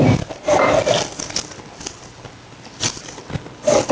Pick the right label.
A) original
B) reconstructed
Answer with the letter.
A